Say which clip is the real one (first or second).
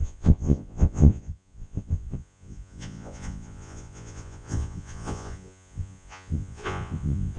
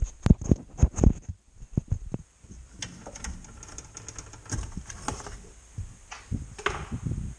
second